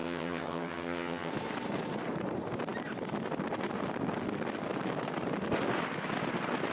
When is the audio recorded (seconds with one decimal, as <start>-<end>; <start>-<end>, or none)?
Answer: 1.3-6.7